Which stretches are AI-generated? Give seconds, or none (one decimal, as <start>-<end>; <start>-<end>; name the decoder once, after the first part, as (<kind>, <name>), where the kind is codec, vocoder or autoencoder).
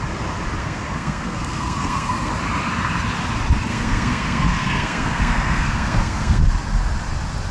0.6-2.3 (codec, SNAC); 3.7-6.4